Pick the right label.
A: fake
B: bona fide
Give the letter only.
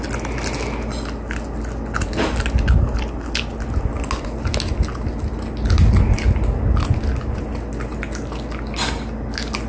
B